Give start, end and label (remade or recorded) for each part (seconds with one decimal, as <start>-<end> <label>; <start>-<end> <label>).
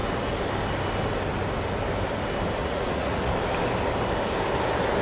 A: 0.0-2.6 recorded; 2.6-3.3 remade; 3.3-5.0 recorded